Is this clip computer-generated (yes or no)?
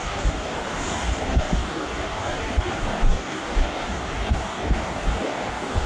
yes